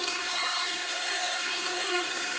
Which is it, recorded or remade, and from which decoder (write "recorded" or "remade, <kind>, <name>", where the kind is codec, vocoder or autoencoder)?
remade, codec, SNAC